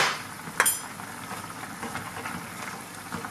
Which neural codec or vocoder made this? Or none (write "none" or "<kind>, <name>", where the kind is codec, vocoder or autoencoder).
none